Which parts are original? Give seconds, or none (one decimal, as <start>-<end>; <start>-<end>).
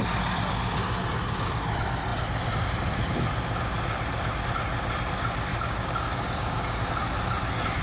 0.0-5.5; 6.9-7.8